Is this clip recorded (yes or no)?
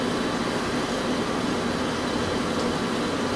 yes